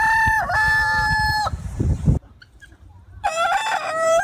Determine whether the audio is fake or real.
fake